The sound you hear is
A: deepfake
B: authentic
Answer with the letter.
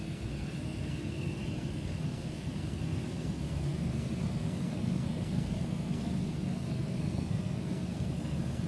A